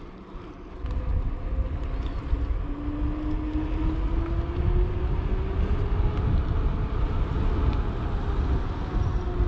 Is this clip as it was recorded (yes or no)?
yes